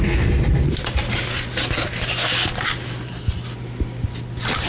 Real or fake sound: real